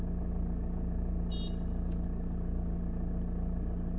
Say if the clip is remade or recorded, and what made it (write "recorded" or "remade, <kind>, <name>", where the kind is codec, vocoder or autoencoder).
recorded